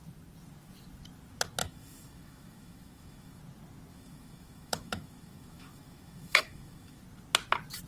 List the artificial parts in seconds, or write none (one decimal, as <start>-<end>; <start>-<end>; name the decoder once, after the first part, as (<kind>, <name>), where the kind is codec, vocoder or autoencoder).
1.6-3.4 (autoencoder, DAC-VAE); 3.9-7.0